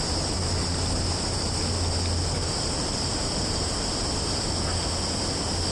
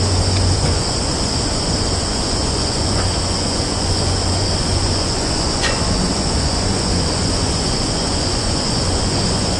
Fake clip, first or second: second